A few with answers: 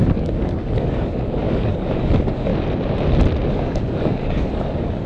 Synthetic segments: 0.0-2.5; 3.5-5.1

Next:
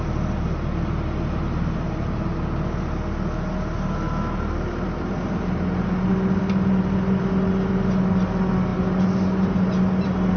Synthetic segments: none

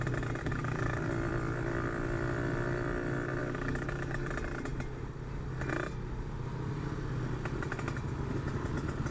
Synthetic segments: 0.4-1.1; 3.4-4.3

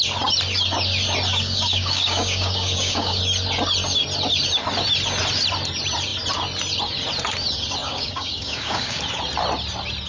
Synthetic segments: 1.3-3.2; 7.8-9.0